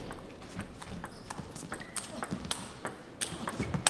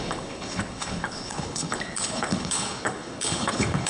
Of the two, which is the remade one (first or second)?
second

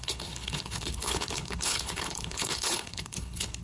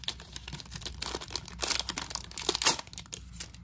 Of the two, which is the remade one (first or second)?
first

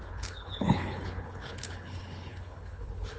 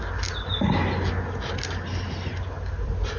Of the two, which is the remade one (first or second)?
first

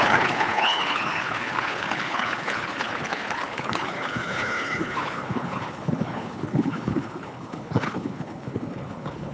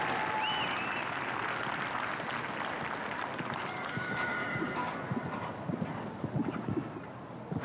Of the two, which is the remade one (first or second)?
first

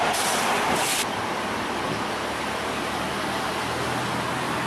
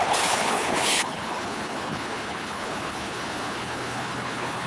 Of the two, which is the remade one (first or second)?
second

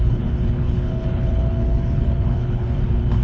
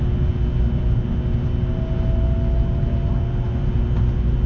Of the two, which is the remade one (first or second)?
first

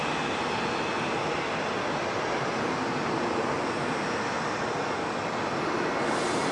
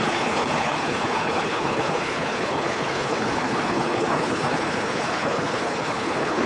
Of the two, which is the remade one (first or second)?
second